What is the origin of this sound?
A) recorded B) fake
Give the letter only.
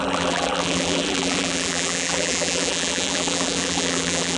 B